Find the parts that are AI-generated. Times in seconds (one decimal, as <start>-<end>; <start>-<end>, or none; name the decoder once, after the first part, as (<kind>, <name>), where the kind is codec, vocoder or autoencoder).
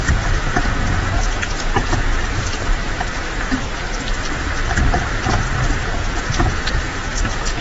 0.0-2.1 (vocoder, Vocos); 5.8-7.6